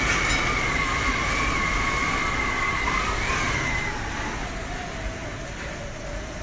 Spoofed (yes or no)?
no